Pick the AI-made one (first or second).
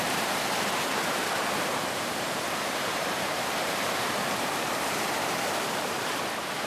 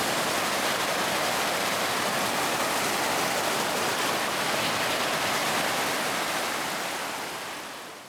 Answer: first